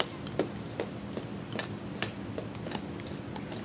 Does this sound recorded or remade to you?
recorded